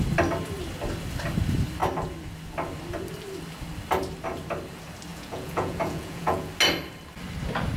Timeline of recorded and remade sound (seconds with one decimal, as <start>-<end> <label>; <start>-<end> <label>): 0.0-5.1 recorded; 5.1-6.5 remade; 6.5-7.8 recorded